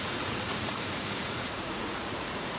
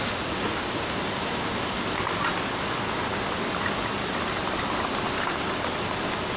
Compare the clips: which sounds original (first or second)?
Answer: second